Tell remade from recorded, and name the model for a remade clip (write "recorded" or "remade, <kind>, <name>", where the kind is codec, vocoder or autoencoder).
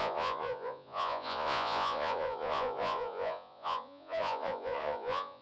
remade, vocoder, Vocos